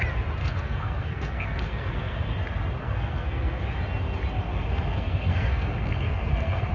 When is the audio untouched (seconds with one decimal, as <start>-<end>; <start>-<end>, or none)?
0.0-0.4; 2.3-2.8; 3.6-4.5